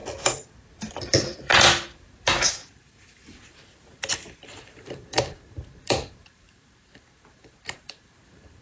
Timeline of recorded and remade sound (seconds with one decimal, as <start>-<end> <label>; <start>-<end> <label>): 0.0-0.9 recorded; 0.9-1.5 remade; 1.5-2.0 recorded; 2.0-8.6 remade